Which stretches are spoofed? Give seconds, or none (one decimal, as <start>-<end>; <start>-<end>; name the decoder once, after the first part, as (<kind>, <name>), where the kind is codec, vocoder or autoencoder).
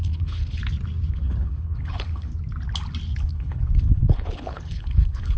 0.0-0.6 (codec, HILCodec); 1.1-2.3; 3.2-5.4